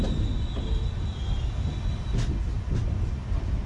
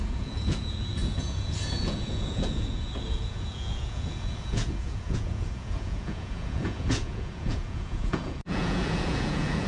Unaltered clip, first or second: first